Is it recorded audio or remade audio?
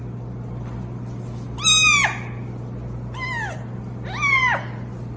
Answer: recorded